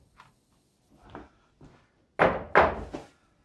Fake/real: real